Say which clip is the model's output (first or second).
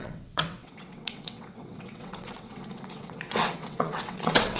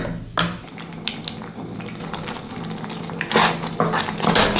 first